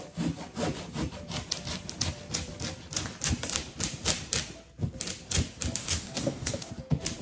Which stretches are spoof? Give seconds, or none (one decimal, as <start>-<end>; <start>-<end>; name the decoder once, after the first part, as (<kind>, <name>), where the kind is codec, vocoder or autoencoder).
5.8-6.7 (codec, DAC)

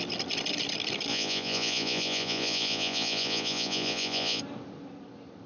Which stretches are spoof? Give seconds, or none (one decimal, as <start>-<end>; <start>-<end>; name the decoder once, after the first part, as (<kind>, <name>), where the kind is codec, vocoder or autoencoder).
1.1-4.4 (vocoder, Vocos)

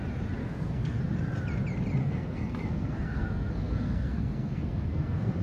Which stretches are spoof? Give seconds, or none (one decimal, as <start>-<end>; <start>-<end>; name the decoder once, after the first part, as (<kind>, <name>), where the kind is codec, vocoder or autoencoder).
0.4-1.0 (codec, SNAC); 2.0-5.4

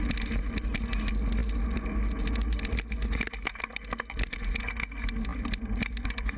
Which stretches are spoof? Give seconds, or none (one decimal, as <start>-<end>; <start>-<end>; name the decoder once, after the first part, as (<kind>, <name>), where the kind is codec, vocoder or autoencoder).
none

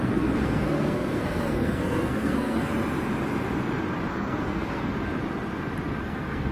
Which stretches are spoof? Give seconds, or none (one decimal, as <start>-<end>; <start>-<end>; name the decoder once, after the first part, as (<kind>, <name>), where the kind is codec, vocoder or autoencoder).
0.0-2.7 (codec, SNAC); 4.1-4.9; 6.0-6.5

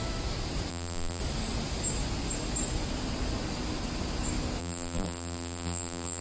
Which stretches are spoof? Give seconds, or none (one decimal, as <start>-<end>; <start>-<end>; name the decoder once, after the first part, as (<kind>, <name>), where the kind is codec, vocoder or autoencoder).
0.7-1.2 (vocoder, BigVGAN v2); 4.6-6.2

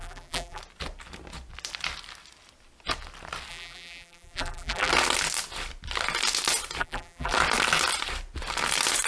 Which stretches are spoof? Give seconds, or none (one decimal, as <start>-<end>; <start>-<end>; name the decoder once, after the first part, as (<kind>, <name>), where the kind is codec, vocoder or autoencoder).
0.0-0.6 (vocoder, BigVGAN v2); 3.5-4.9; 6.8-7.3

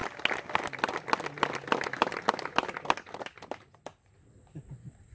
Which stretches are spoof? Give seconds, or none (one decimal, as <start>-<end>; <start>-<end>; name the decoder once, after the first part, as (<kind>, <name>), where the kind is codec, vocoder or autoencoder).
none